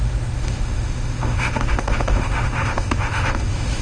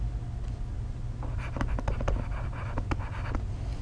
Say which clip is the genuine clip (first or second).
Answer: second